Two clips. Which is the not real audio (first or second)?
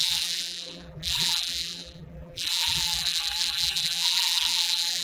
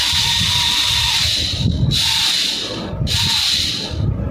first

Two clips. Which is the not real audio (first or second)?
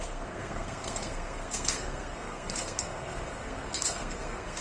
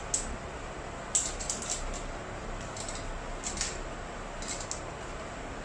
first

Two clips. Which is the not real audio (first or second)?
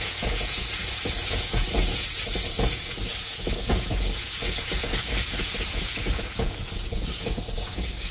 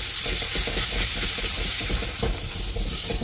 first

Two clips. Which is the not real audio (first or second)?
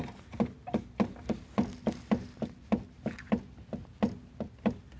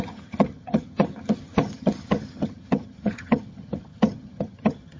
second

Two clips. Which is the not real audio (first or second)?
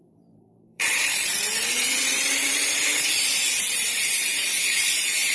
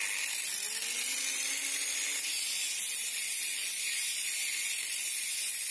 first